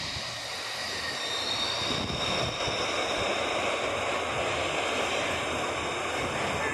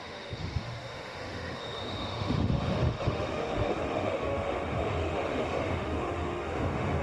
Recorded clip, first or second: first